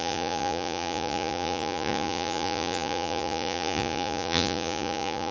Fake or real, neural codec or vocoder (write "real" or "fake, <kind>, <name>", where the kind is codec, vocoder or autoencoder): fake, vocoder, Vocos